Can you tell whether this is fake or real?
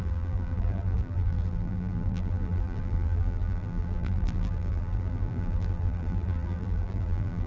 fake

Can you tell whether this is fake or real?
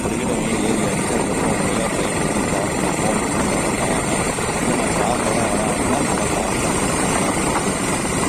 fake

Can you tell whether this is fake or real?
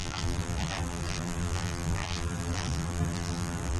fake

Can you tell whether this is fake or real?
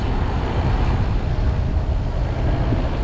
real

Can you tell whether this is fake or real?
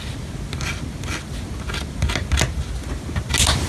real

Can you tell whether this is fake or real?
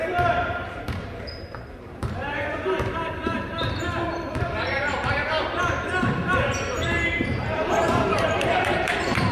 fake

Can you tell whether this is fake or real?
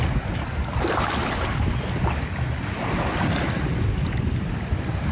real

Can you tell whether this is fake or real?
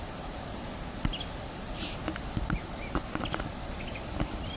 real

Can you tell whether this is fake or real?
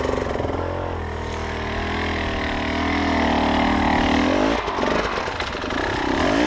real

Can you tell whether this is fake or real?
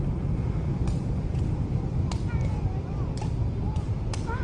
real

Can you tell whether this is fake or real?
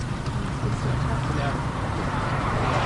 fake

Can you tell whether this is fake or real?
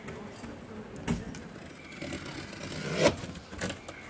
real